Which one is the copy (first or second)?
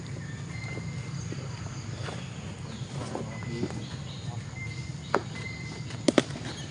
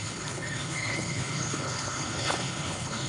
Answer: second